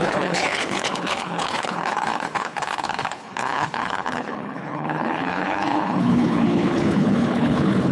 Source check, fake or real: fake